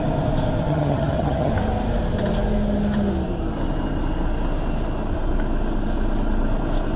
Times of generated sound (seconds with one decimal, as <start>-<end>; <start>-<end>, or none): 0.7-1.5